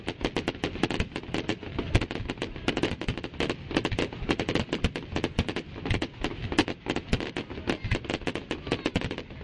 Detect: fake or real real